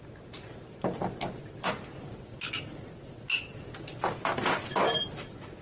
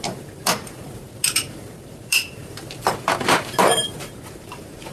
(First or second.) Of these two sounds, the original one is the first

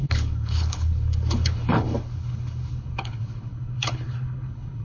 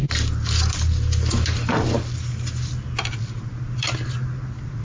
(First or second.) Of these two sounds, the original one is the second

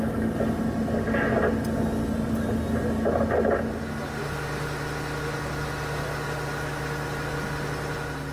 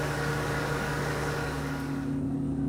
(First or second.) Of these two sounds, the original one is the first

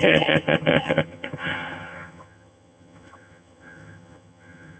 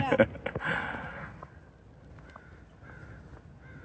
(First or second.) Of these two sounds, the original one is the second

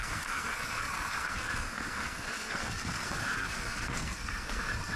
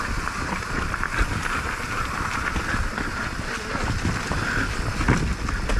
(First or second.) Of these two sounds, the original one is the second